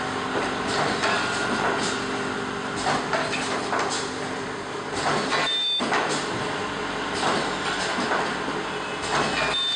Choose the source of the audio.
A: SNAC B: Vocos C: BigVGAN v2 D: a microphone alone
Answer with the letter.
D